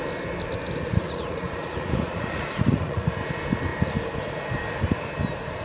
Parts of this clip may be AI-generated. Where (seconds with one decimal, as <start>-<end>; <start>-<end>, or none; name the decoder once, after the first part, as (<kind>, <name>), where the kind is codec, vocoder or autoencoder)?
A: 0.8-3.1 (vocoder, Vocos)